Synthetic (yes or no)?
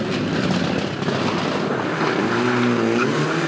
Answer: no